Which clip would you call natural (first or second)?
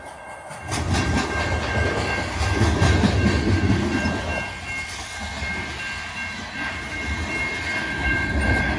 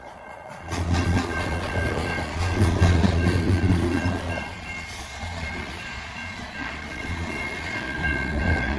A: first